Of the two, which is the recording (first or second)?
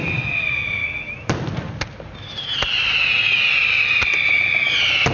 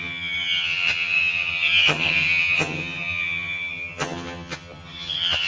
first